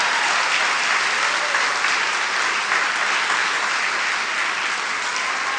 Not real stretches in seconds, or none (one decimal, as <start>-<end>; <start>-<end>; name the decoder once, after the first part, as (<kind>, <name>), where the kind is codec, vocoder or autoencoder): none